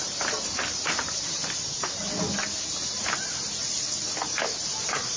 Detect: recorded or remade recorded